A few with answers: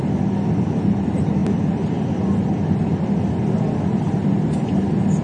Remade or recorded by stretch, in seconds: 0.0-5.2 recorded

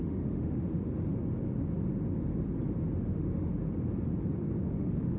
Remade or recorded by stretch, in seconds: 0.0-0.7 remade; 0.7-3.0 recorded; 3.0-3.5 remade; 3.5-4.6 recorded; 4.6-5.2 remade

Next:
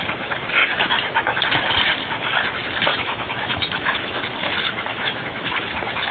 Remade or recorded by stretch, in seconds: 0.0-0.6 recorded; 0.6-1.4 remade; 1.4-2.9 recorded; 2.9-4.2 remade; 4.2-4.9 recorded; 4.9-5.5 remade; 5.5-6.1 recorded

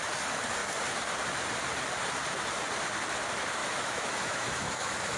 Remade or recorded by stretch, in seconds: 0.0-3.6 recorded; 3.6-5.2 remade

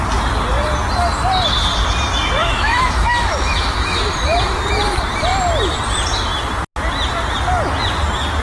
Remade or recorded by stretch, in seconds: 0.0-2.4 recorded; 2.4-4.0 remade; 4.0-8.4 recorded

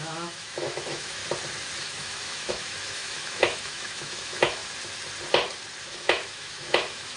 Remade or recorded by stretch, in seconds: 0.0-1.2 remade; 1.2-1.8 recorded; 1.8-4.6 remade; 4.6-5.8 recorded; 5.8-7.2 remade